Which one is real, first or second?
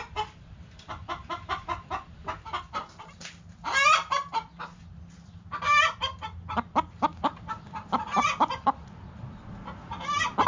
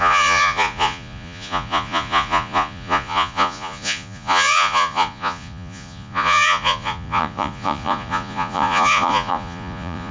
first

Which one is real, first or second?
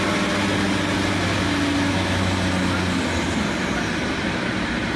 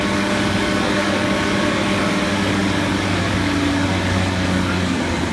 first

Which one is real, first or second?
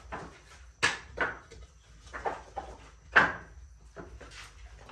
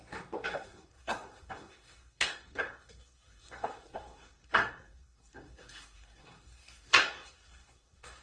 first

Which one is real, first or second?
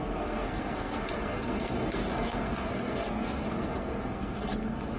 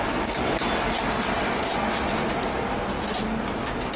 second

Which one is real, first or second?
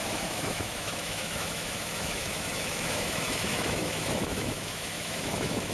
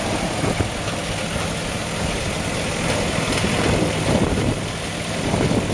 second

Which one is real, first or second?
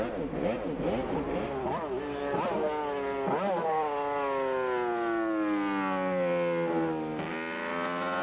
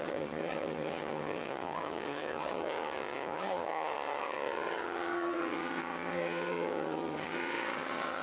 first